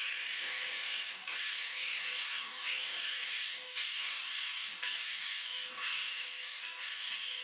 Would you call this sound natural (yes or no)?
no